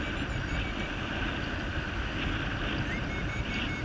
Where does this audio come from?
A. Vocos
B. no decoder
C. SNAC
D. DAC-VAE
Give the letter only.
B